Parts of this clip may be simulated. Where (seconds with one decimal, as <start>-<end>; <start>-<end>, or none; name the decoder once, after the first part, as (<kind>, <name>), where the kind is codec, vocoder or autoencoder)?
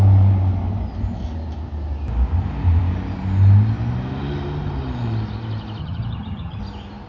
5.8-6.6 (vocoder, HiFi-GAN)